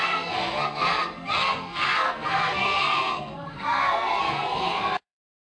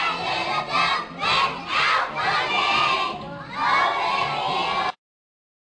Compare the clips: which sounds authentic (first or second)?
second